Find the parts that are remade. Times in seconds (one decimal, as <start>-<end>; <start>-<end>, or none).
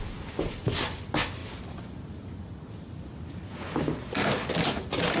none